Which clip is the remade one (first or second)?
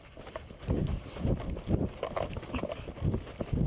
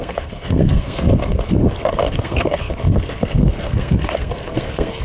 second